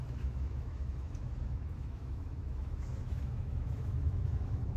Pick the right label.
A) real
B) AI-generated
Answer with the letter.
B